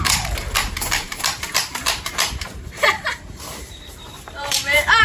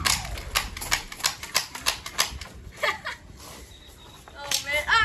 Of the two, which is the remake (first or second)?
first